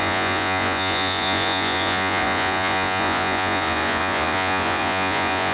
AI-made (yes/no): yes